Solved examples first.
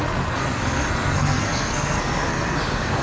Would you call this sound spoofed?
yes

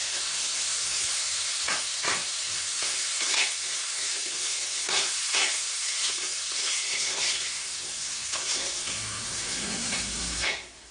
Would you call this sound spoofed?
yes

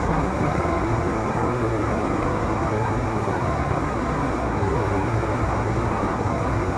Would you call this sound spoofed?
yes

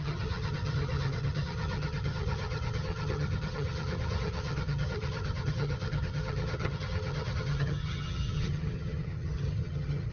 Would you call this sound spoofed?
yes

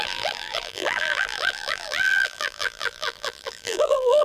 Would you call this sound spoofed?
yes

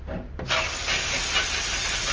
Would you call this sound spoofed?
no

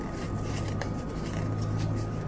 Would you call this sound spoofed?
no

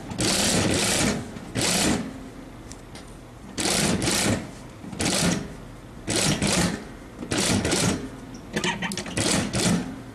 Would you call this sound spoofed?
no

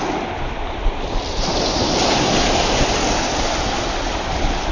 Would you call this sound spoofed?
no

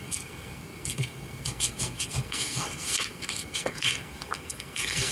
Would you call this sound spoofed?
yes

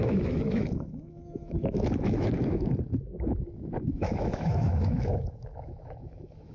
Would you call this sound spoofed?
yes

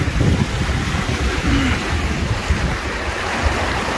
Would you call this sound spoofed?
no